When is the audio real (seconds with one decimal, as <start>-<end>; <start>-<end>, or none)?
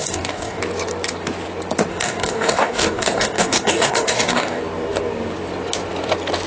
0.6-1.9; 4.6-6.5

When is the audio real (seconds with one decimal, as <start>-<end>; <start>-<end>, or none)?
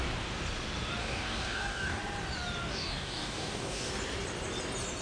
0.0-1.0; 2.0-2.7; 3.9-5.0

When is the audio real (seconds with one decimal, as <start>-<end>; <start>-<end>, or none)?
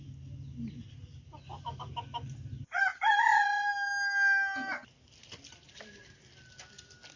0.0-7.2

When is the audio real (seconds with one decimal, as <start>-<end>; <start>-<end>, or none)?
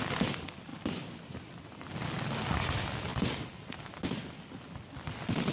0.0-0.7; 1.9-5.5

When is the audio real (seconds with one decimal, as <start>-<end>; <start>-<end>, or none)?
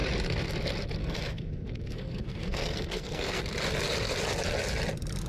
0.0-1.0; 3.4-5.3